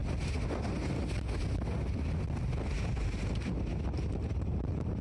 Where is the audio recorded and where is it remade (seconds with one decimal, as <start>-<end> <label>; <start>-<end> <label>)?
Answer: 0.0-5.0 recorded